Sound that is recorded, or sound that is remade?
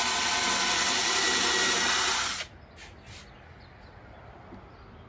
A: recorded